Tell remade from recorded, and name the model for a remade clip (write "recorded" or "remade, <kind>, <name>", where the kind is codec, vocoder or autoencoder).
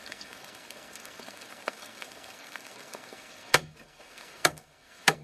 remade, codec, SNAC